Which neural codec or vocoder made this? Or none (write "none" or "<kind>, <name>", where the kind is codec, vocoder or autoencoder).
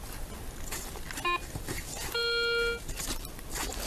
none